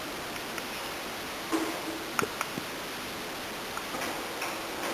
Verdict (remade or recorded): recorded